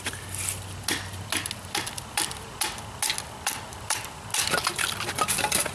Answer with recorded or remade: recorded